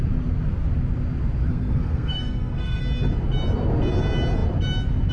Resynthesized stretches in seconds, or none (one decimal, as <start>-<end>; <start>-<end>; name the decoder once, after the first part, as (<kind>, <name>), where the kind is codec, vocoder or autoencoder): 1.5-2.8 (codec, SNAC)